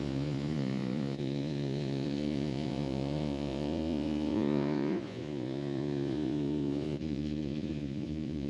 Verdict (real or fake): fake